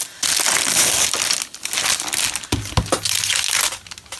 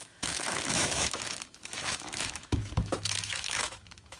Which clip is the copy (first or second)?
second